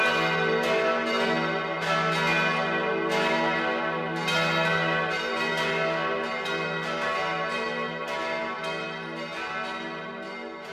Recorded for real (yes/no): yes